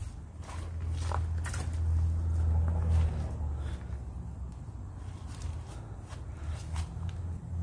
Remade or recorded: recorded